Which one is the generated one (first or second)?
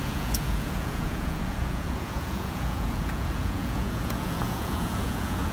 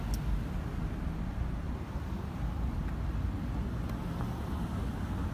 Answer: first